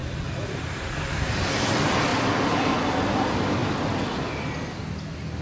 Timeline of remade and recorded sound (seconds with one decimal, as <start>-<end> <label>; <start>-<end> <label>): 0.0-0.7 remade; 0.7-5.4 recorded